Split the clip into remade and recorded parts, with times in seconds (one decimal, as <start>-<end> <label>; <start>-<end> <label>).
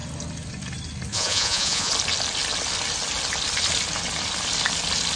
0.0-1.1 recorded; 1.1-1.9 remade; 1.9-5.2 recorded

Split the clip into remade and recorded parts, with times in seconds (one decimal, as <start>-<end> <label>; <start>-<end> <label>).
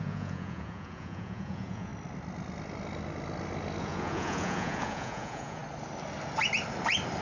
0.0-1.9 remade; 1.9-3.8 recorded; 3.8-5.6 remade; 5.6-7.2 recorded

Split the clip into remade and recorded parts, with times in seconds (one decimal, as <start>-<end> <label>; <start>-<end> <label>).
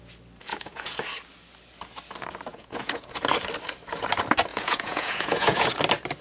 0.0-0.5 recorded; 0.5-1.0 remade; 1.0-2.5 recorded; 2.5-3.2 remade; 3.2-4.5 recorded; 4.5-5.8 remade; 5.8-6.2 recorded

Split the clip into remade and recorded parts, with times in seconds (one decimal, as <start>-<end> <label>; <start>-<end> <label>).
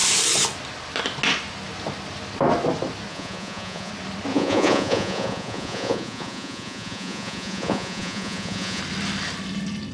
0.0-3.1 recorded; 3.1-3.9 remade; 3.9-4.3 recorded; 4.3-8.8 remade; 8.8-9.9 recorded